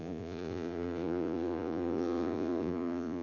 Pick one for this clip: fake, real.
fake